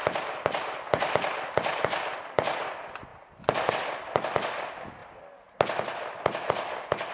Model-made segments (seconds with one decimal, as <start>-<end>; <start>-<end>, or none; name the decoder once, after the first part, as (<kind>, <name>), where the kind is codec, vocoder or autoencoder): none